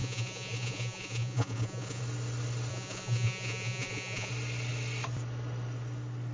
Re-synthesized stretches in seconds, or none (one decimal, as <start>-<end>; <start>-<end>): 0.0-2.0; 2.7-4.3